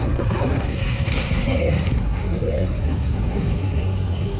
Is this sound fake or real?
fake